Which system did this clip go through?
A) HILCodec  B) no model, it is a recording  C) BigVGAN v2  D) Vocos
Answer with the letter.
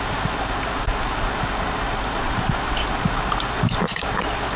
C